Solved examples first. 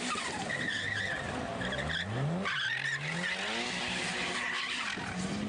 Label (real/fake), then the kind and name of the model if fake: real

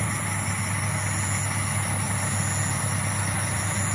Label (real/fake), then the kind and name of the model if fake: real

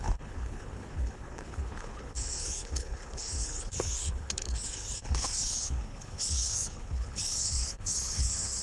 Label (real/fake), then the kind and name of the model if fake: fake, codec, HILCodec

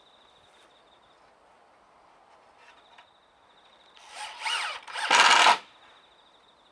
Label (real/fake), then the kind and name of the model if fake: real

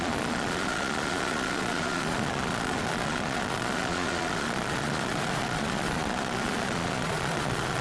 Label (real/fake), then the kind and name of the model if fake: fake, vocoder, Vocos